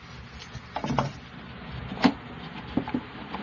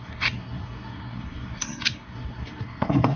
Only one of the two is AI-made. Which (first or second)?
second